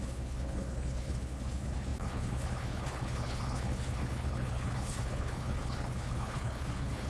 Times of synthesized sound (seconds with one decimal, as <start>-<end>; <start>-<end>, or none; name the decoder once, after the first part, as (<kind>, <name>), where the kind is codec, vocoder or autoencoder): 0.0-7.1 (codec, HILCodec)